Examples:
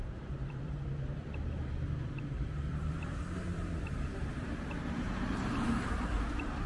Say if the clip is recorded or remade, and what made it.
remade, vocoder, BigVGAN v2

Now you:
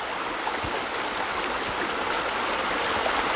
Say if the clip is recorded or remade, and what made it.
recorded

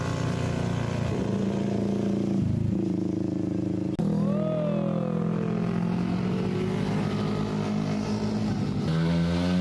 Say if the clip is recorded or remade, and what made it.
recorded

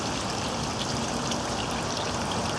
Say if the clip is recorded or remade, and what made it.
recorded